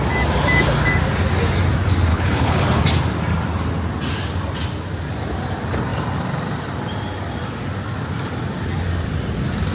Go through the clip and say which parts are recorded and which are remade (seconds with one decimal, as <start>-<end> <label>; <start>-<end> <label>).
0.0-2.1 recorded; 2.1-2.8 remade; 2.8-9.7 recorded